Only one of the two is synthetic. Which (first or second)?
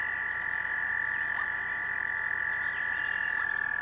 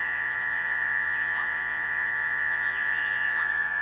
second